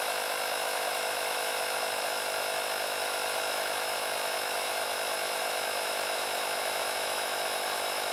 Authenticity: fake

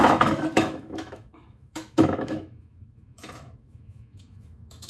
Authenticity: fake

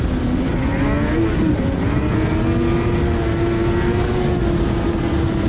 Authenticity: real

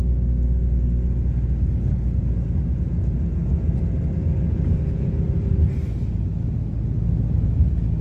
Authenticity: real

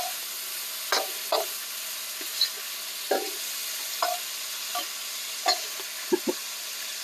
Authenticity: real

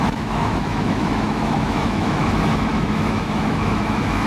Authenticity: fake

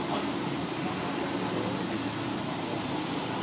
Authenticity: real